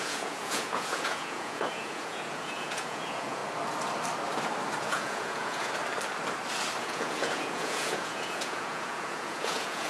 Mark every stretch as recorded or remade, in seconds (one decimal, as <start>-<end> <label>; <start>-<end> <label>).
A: 0.0-3.4 remade; 3.4-4.8 recorded; 4.8-5.8 remade; 5.8-6.8 recorded; 6.8-9.9 remade